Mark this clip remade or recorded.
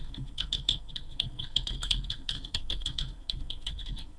remade